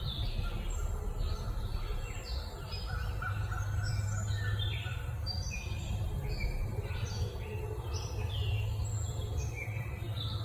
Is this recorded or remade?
recorded